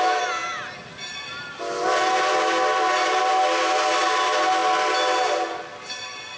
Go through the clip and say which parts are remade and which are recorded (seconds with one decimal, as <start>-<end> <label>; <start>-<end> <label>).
0.0-6.4 recorded